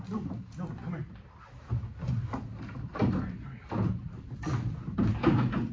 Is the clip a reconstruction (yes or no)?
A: no